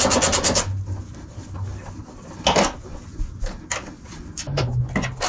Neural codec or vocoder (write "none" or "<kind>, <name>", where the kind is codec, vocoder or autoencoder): none